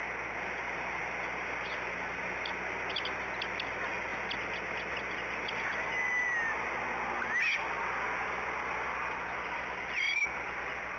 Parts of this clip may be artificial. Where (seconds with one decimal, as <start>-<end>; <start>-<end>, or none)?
none